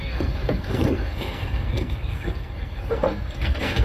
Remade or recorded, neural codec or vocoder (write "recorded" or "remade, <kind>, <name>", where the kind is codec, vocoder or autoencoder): remade, codec, SNAC